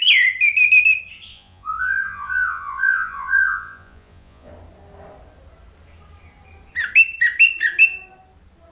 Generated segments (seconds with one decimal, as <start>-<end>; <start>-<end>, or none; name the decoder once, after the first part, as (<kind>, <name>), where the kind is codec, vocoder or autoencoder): 1.3-4.5 (vocoder, Vocos)

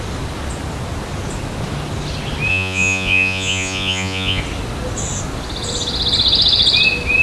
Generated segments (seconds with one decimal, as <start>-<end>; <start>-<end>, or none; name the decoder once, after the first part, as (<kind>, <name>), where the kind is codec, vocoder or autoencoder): 2.5-4.4 (vocoder, Vocos)

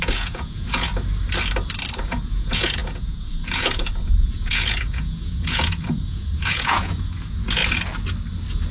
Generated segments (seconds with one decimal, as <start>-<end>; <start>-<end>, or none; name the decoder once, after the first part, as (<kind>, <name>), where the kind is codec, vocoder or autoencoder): 0.0-0.9 (vocoder, Vocos); 2.0-7.6

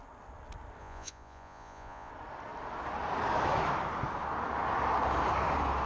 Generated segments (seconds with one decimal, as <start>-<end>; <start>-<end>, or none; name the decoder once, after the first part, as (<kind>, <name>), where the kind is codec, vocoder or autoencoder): 0.8-2.1 (vocoder, Vocos)

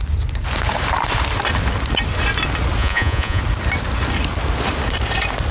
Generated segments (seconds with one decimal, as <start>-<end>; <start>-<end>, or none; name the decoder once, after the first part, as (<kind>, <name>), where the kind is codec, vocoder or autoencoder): 2.8-3.4 (vocoder, Vocos)

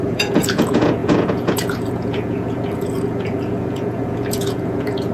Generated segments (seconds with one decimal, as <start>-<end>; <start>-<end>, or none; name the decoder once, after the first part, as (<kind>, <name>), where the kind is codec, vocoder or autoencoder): 0.0-5.1 (vocoder, Vocos)